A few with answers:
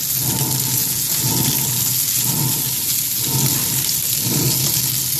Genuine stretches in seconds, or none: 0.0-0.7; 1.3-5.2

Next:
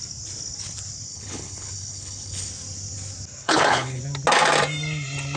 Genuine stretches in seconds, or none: 0.0-1.1; 2.5-3.4; 4.0-5.4

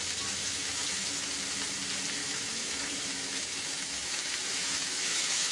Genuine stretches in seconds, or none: 0.0-0.4; 1.3-2.2

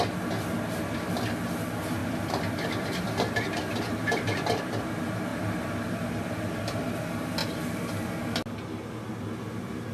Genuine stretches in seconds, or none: 0.0-2.0; 4.8-5.3; 7.0-9.9

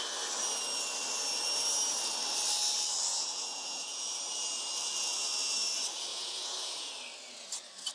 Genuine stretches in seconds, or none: 0.0-3.1; 4.2-6.1; 6.9-7.9

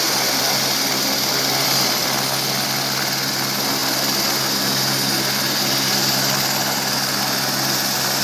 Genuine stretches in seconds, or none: 0.0-8.2

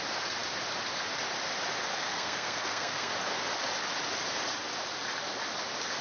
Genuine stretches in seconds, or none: 0.0-1.9; 3.1-6.0